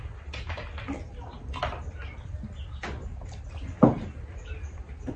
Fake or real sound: real